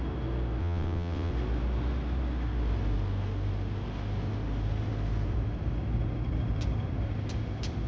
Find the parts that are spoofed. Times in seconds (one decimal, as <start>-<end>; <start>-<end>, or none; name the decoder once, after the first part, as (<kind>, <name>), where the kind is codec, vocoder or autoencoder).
0.6-1.3 (vocoder, WaveNeXt)